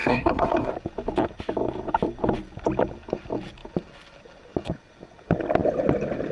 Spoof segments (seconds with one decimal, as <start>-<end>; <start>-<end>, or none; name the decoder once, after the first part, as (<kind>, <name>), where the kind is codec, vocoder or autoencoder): 0.0-0.7 (codec, SNAC)